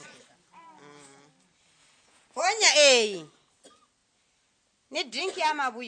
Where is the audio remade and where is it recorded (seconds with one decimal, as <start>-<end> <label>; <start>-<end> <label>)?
0.0-1.8 recorded; 1.8-2.4 remade; 2.4-5.9 recorded